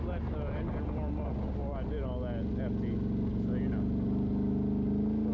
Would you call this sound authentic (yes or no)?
yes